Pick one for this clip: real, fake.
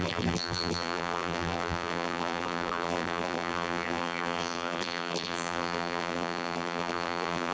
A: fake